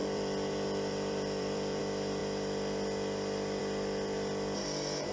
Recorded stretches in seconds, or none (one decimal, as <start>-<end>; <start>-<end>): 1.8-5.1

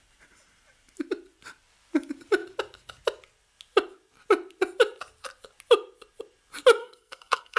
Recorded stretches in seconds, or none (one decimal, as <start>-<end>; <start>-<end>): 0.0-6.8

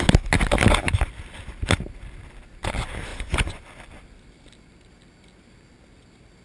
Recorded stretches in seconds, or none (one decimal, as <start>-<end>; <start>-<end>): 0.0-3.1; 3.6-6.4

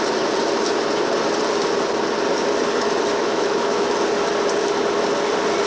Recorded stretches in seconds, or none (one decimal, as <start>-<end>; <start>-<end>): 0.0-3.2; 3.9-5.7

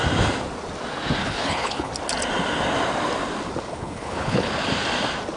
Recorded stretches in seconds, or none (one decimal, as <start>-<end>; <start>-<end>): 0.0-1.2; 1.9-3.7; 4.5-5.4

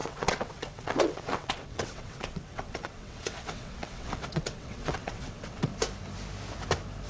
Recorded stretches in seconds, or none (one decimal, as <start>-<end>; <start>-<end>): 5.7-7.1

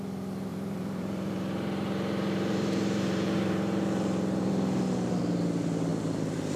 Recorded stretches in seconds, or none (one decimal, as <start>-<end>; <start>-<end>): 0.0-0.5; 4.5-6.6

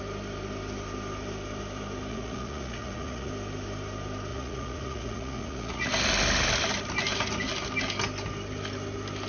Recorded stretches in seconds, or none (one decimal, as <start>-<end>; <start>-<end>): 0.0-2.1; 3.3-4.3; 5.9-9.3